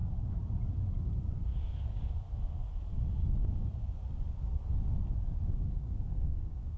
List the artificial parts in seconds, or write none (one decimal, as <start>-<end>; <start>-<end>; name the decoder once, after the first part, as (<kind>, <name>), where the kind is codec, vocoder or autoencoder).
1.3-1.9 (codec, SNAC); 5.7-6.8